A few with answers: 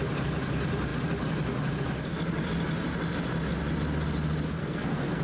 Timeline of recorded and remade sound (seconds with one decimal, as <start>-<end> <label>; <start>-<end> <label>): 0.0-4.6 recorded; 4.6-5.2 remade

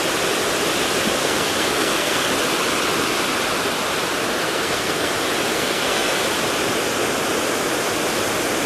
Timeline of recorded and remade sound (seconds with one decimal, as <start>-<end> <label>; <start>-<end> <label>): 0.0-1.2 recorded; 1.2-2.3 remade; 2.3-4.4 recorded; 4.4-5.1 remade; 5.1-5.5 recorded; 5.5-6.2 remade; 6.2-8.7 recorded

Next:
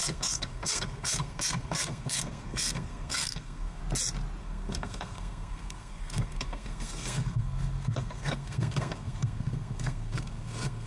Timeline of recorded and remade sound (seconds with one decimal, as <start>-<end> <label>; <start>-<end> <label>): 0.0-3.8 remade; 3.8-4.4 recorded; 4.4-10.9 remade